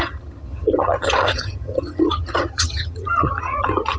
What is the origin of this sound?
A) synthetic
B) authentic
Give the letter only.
A